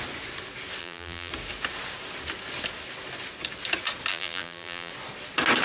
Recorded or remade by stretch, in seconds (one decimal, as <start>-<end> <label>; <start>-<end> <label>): 0.0-0.8 recorded; 0.8-1.3 remade; 1.3-4.1 recorded; 4.1-4.9 remade; 4.9-5.6 recorded